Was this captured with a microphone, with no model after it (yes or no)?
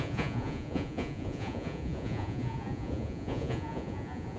no